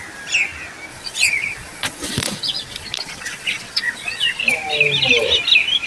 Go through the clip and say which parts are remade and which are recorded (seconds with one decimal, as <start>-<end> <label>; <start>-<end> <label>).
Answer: 0.0-0.9 recorded; 0.9-4.4 remade; 4.4-5.9 recorded